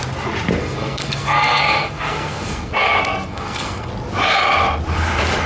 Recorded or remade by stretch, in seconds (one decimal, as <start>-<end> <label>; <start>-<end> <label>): 0.0-0.6 recorded; 0.6-3.9 remade; 3.9-5.5 recorded